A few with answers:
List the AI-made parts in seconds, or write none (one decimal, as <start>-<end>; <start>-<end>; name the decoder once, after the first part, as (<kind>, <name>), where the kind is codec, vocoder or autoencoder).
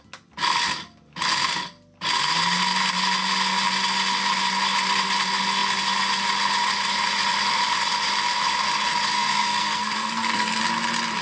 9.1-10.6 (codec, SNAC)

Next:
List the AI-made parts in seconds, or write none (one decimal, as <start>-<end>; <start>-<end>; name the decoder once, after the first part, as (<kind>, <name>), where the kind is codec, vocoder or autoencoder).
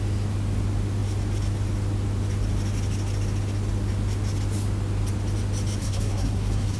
5.8-6.8 (codec, SNAC)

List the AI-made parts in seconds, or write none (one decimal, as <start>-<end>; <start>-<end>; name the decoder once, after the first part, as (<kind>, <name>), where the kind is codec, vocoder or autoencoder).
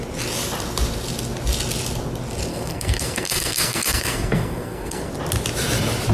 2.5-5.1 (codec, SNAC)